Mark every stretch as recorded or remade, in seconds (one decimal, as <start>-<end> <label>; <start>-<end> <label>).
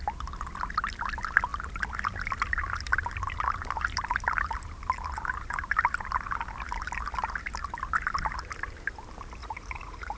0.0-9.4 recorded; 9.4-10.2 remade